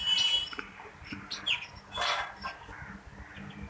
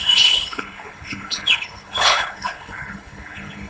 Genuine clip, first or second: first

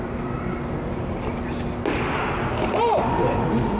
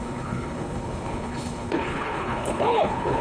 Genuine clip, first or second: first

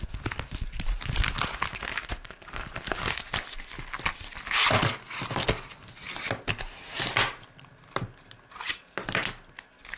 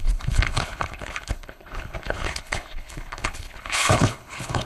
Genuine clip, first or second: first